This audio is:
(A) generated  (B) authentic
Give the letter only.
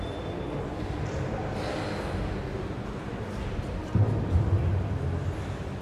B